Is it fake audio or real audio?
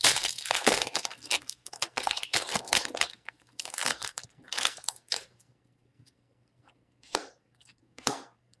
fake